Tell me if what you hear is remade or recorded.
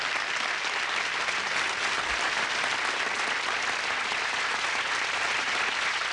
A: recorded